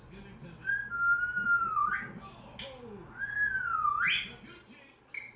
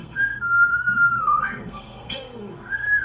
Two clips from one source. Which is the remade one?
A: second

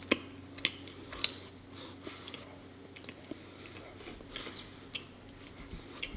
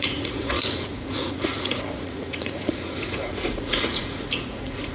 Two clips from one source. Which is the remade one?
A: second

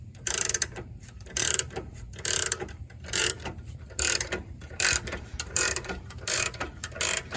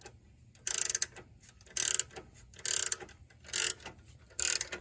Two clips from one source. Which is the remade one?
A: first